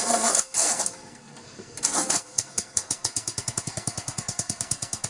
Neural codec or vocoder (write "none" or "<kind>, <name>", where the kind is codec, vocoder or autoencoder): codec, SNAC